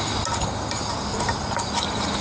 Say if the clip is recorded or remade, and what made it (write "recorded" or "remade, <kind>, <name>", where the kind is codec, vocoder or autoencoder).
recorded